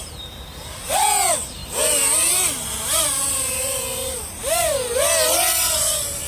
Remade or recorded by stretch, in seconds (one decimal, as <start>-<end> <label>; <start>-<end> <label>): 0.0-6.3 recorded